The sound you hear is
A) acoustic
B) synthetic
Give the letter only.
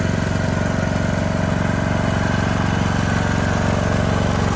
A